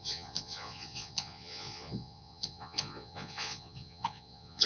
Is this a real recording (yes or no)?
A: no